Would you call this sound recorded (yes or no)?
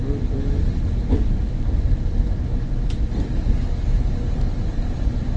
yes